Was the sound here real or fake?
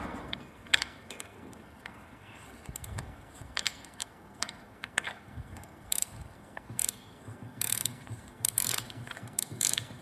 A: fake